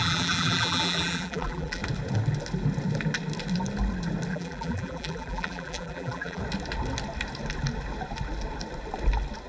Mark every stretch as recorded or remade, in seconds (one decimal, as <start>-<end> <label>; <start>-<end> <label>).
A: 0.0-1.8 remade; 1.8-4.3 recorded; 4.3-6.4 remade; 6.4-9.5 recorded